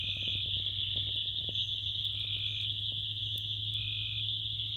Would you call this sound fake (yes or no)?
no